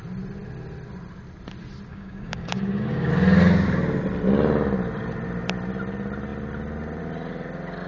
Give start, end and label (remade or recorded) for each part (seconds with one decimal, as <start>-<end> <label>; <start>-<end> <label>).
0.0-1.9 recorded; 1.9-3.1 remade; 3.1-7.9 recorded